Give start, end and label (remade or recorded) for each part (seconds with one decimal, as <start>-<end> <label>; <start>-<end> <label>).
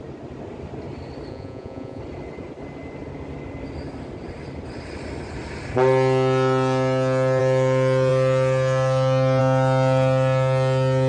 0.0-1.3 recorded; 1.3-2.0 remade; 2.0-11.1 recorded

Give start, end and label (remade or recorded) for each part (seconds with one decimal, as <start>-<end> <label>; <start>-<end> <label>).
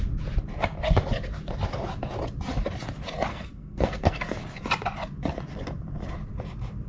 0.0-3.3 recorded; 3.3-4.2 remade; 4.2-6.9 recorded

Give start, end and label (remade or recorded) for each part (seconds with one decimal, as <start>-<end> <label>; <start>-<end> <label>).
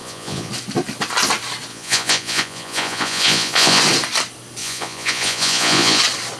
0.0-0.5 remade; 0.5-1.7 recorded; 1.7-3.8 remade; 3.8-4.6 recorded; 4.6-6.0 remade; 6.0-6.4 recorded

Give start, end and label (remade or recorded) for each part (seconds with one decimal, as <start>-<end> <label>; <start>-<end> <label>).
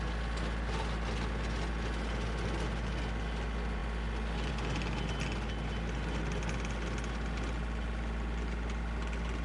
0.0-9.4 recorded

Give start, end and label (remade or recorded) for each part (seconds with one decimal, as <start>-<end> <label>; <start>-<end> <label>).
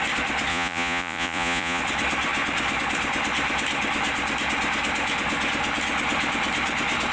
0.0-0.5 recorded; 0.5-1.8 remade; 1.8-7.1 recorded